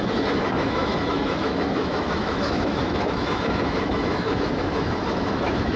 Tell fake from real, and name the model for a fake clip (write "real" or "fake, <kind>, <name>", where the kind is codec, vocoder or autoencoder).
fake, autoencoder, DAC-VAE